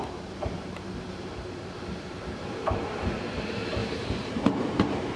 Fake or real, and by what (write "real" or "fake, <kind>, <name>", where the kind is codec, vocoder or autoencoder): fake, vocoder, BigVGAN v2